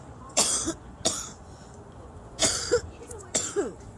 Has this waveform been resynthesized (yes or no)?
yes